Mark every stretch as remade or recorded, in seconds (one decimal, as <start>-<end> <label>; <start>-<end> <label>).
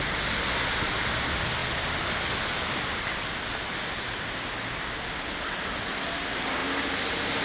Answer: 0.0-7.4 recorded